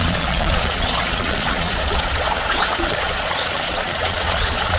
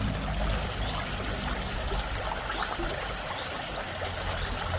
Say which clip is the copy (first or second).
first